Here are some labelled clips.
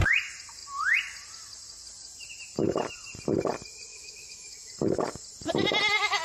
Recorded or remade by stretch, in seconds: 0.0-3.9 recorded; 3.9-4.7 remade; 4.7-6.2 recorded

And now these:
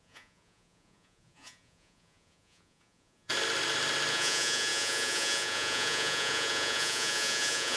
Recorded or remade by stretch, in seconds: 0.0-3.3 remade; 3.3-4.1 recorded; 4.1-7.8 remade

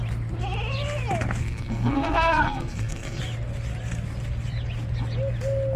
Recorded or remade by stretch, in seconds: 0.0-1.4 recorded; 1.4-3.2 remade; 3.2-5.8 recorded

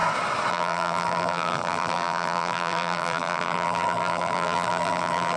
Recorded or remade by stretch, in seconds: 0.0-0.5 recorded; 0.5-5.4 remade

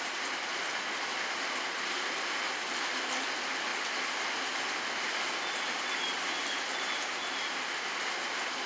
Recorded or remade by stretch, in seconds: 0.0-8.7 recorded

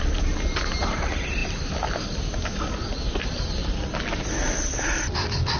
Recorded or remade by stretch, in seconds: 0.0-5.6 recorded